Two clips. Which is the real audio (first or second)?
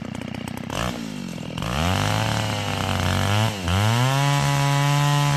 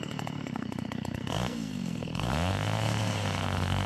first